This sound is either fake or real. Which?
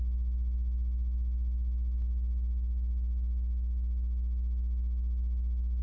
real